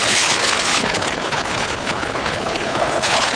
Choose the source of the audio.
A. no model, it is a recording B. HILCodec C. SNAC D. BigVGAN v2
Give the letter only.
B